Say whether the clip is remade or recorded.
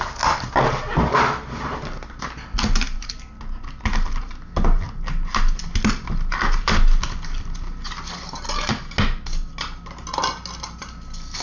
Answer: recorded